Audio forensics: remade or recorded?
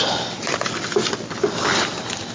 recorded